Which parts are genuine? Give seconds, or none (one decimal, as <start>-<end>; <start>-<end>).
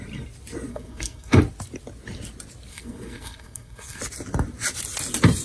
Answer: 0.0-0.7; 1.4-2.7; 4.0-5.4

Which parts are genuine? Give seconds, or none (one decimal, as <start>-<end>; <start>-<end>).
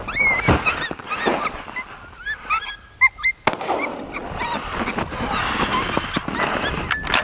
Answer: 0.0-7.2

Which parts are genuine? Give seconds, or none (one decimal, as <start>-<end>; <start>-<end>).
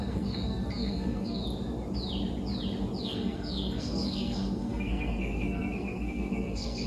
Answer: 1.4-3.0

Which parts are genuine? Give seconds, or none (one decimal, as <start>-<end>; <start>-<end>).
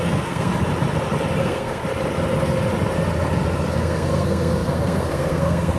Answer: 0.5-1.4; 1.8-3.7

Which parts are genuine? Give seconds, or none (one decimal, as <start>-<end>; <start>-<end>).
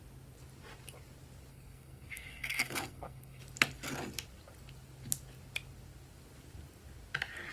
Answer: 0.0-1.5; 3.4-7.5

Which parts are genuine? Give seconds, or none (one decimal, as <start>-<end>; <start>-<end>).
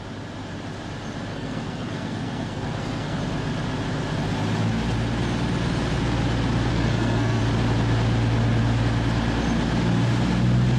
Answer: 0.0-1.3; 3.2-6.7; 7.4-10.8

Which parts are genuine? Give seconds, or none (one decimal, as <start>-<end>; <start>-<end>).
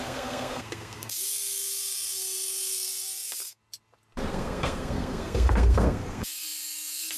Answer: 3.6-4.3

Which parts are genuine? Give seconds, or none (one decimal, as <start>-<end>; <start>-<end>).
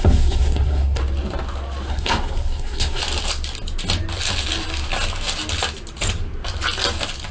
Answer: 1.0-1.9; 3.0-7.3